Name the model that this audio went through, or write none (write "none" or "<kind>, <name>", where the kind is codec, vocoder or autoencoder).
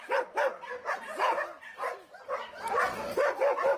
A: none